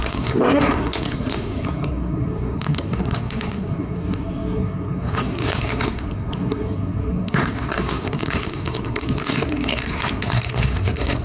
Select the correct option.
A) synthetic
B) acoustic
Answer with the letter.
A